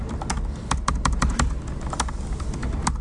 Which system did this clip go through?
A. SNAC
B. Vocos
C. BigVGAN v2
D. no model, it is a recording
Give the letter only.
D